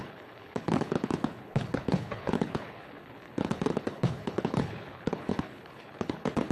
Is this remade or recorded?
remade